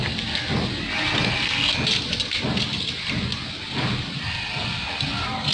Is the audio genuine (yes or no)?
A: yes